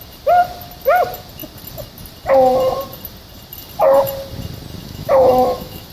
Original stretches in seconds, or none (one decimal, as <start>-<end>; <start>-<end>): 0.0-4.8